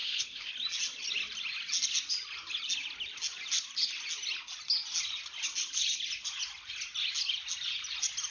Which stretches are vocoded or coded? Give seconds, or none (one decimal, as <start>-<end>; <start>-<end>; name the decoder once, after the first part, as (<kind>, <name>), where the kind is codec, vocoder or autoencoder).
0.0-0.5 (codec, ZipCodec)